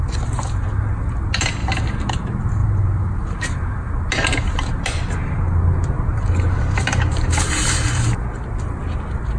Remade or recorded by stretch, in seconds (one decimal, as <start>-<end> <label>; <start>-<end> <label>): 0.0-1.6 recorded; 1.6-2.1 remade; 2.1-2.6 recorded; 2.6-3.5 remade; 3.5-6.1 recorded; 6.1-8.1 remade; 8.1-9.4 recorded